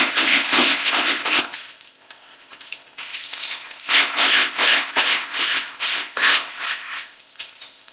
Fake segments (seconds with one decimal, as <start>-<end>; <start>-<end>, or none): 0.0-7.9

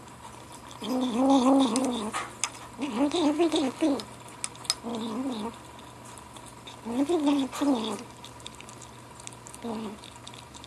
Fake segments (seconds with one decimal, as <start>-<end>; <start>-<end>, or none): none